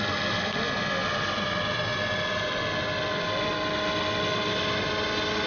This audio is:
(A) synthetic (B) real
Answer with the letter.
B